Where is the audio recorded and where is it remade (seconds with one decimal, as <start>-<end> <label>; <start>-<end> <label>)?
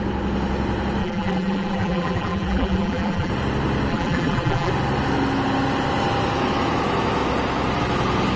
0.0-1.0 recorded; 1.0-3.3 remade; 3.3-3.9 recorded; 3.9-4.7 remade; 4.7-8.4 recorded